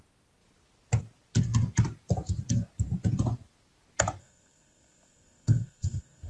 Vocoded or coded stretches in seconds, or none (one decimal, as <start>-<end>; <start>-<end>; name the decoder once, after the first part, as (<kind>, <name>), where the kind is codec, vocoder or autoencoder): 4.2-6.3 (codec, SNAC)